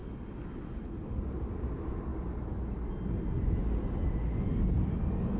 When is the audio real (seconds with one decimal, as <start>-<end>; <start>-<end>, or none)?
0.0-0.5; 2.1-5.4